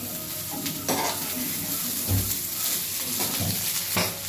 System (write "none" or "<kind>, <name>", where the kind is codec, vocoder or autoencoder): none